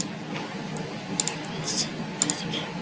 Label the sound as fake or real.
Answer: real